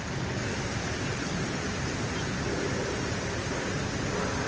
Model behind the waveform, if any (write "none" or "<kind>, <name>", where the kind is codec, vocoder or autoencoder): none